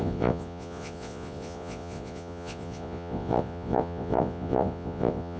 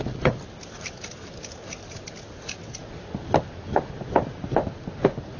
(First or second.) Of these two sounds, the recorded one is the second